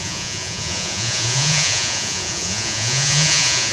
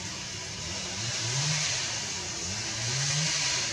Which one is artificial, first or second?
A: first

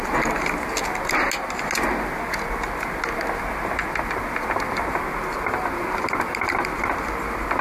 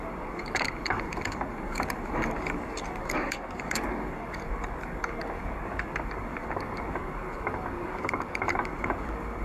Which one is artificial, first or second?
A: second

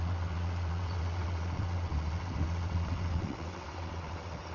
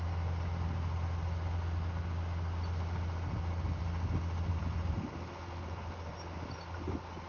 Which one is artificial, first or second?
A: first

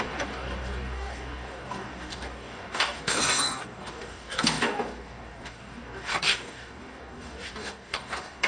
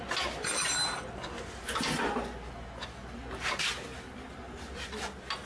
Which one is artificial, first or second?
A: first